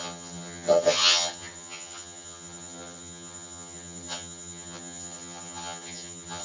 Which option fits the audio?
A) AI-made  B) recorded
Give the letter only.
A